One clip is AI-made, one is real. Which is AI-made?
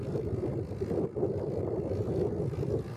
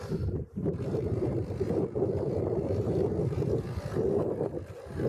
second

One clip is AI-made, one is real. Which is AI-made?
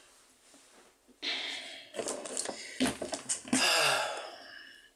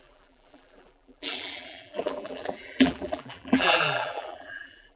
second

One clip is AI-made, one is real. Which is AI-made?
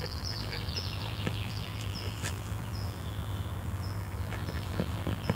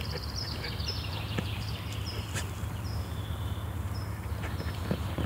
first